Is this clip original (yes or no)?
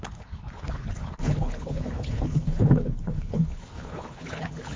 no